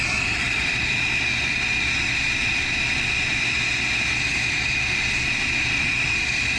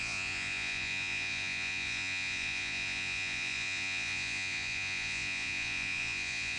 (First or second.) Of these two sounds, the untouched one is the first